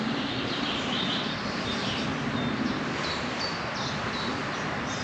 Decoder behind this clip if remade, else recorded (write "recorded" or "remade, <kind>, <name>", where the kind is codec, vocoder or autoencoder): recorded